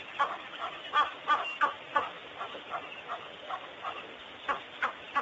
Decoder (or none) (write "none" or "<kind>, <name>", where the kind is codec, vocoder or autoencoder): none